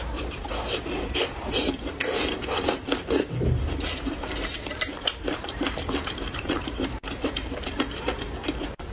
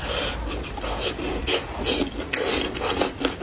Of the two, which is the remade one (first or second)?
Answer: first